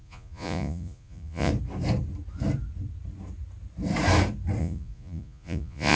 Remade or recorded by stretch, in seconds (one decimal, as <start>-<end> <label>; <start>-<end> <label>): 0.0-1.5 remade; 1.5-4.6 recorded; 4.6-6.0 remade